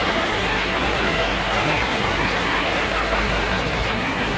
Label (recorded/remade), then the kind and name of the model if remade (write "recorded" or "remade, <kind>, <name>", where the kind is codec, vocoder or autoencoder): remade, codec, SNAC